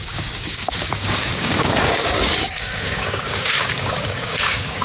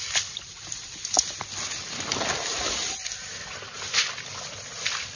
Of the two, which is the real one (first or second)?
second